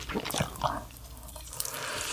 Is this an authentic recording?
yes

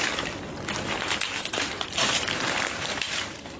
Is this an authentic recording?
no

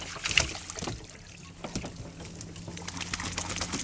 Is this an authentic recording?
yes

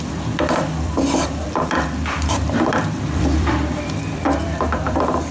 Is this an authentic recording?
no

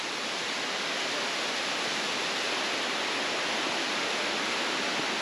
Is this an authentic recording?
yes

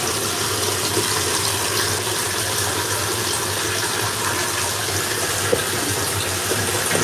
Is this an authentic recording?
yes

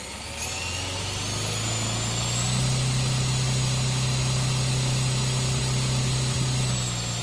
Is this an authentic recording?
yes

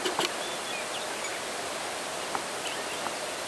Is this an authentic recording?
yes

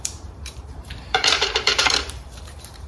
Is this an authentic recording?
no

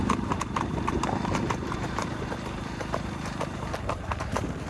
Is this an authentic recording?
no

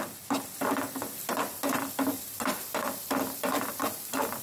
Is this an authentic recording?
no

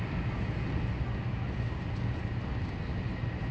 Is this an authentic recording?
yes